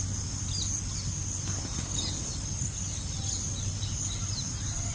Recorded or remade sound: recorded